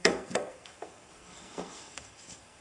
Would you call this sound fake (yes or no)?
yes